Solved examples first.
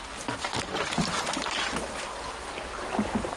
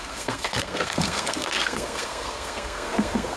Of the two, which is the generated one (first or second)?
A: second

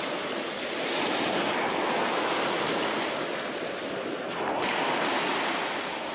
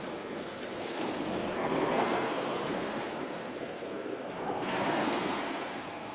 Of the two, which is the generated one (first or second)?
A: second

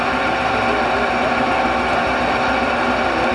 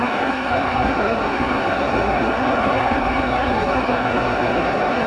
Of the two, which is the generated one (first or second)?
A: second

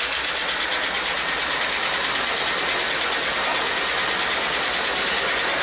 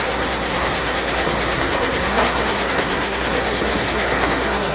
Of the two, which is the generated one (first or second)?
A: second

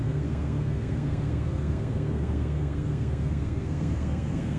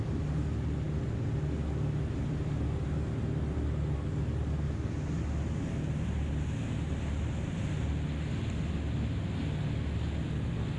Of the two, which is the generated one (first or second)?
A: first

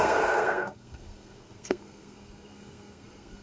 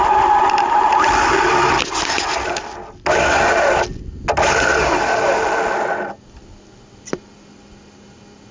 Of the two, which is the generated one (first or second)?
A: first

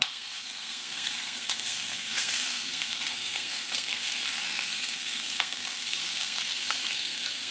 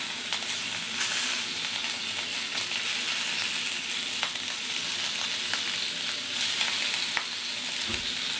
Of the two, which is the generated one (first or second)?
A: first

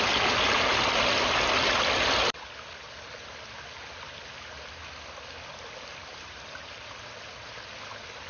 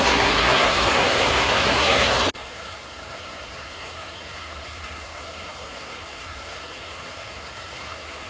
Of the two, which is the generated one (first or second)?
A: second